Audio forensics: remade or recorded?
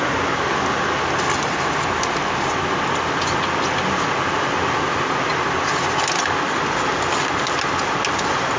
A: recorded